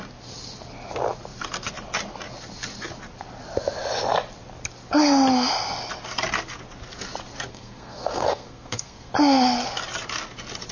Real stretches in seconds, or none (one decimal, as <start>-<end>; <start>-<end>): 0.0-7.5; 9.1-10.7